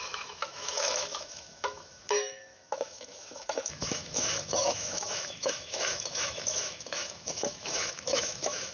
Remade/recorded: remade